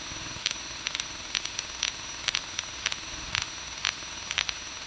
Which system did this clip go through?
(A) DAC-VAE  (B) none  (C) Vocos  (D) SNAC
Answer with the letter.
A